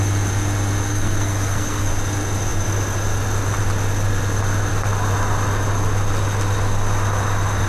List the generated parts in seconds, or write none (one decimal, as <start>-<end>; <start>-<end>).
0.9-1.9